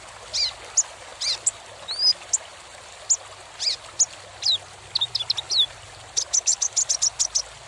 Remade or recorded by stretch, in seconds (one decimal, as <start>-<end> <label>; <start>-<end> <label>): 0.0-7.7 recorded